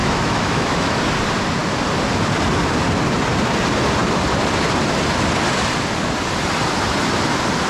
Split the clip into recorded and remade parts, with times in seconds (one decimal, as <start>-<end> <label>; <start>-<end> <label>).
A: 0.0-1.0 remade; 1.0-7.7 recorded